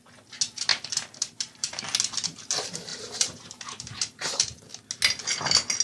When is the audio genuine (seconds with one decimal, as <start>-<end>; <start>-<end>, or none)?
0.0-0.7; 1.8-2.9; 4.6-5.8